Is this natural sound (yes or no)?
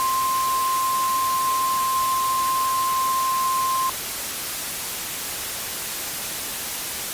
yes